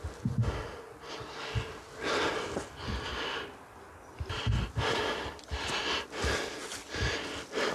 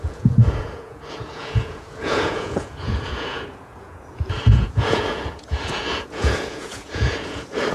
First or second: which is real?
first